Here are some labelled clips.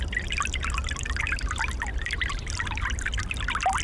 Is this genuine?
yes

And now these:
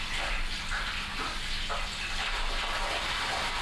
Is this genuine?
yes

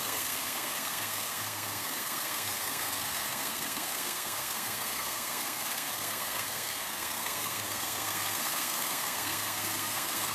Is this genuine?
no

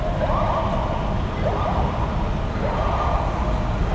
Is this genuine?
yes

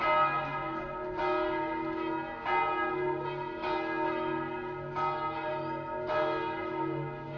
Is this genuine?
yes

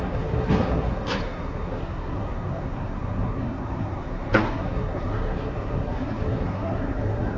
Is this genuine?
no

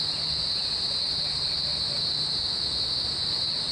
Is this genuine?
yes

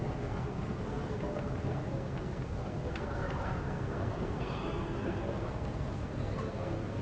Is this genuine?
no